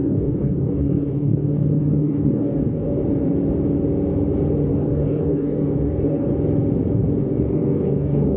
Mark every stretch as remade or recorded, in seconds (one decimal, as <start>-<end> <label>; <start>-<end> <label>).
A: 0.0-3.0 remade; 3.0-4.7 recorded; 4.7-6.3 remade; 6.3-7.2 recorded; 7.2-8.4 remade